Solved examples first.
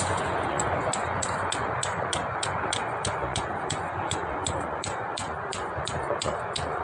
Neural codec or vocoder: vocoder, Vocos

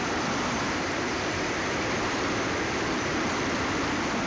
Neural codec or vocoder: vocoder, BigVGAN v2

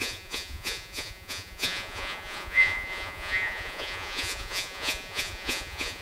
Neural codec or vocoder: vocoder, Vocos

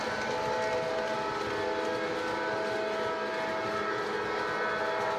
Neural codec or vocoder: none